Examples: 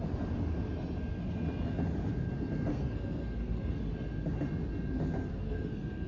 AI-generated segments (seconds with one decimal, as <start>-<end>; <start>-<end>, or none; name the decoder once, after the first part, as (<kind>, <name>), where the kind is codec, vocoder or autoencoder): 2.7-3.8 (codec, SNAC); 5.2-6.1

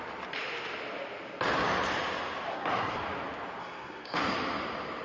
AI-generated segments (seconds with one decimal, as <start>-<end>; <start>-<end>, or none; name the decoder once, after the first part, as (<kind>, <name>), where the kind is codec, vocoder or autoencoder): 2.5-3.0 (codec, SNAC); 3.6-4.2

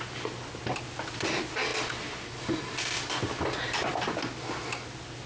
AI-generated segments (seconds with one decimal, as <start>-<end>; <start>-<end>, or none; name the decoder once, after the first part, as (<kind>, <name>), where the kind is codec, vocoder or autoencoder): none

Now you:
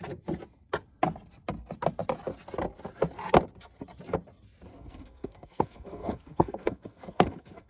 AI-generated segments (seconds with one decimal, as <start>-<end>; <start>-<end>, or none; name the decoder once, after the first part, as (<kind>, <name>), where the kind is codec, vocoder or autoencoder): 4.7-7.7 (codec, SNAC)